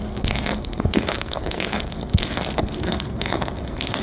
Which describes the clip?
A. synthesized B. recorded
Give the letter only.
A